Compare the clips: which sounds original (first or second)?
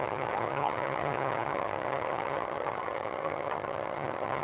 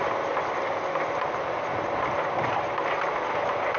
second